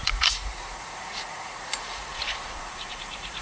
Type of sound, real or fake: fake